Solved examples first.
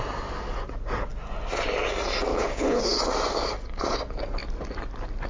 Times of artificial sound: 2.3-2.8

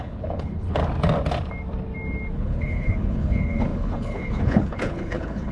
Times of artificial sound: 0.0-0.8; 2.3-5.5

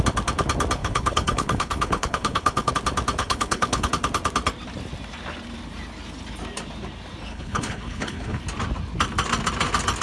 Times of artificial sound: 0.8-2.7; 3.2-3.9; 7.3-8.4

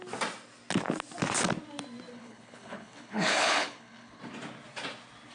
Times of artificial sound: 2.1-4.2

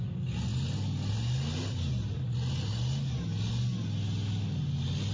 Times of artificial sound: none